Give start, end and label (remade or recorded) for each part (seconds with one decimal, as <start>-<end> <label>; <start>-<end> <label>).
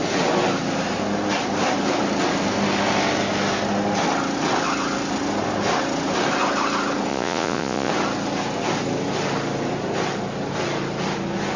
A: 0.0-7.1 recorded; 7.1-7.9 remade; 7.9-11.6 recorded